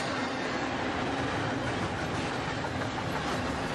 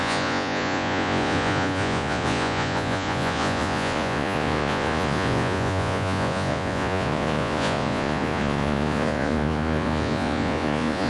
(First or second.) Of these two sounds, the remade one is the second